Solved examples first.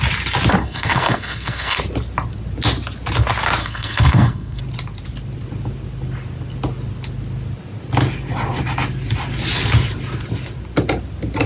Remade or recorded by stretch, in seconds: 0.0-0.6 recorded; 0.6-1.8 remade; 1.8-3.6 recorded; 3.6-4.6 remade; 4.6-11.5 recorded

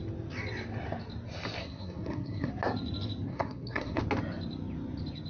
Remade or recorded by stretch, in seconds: 0.0-1.6 recorded; 1.6-2.5 remade; 2.5-3.3 recorded; 3.3-4.0 remade; 4.0-5.3 recorded

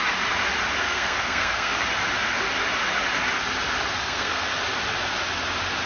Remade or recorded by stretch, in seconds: 0.0-0.8 recorded; 0.8-1.8 remade; 1.8-4.0 recorded; 4.0-4.6 remade; 4.6-5.9 recorded

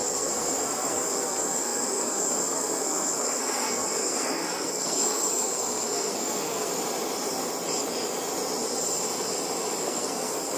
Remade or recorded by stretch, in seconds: 0.0-6.7 remade; 6.7-9.8 recorded; 9.8-10.6 remade